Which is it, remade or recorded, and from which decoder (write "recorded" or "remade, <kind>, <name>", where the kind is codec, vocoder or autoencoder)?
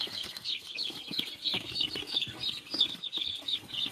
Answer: remade, codec, SNAC